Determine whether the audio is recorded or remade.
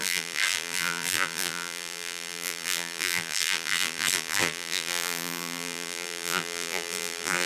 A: remade